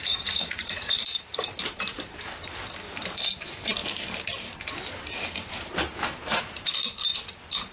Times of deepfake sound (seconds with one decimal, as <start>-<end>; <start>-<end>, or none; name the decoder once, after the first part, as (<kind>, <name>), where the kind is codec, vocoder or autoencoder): 0.0-1.4 (vocoder, Vocos)